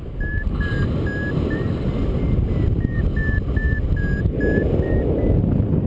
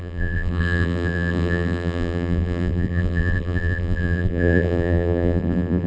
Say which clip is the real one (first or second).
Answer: first